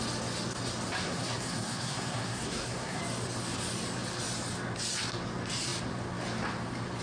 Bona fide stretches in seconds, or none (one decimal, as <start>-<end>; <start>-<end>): 0.0-1.0; 3.0-7.0